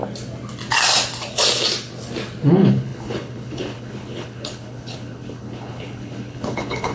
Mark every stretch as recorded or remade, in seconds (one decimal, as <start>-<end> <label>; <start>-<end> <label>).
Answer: 0.0-2.5 recorded; 2.5-6.9 remade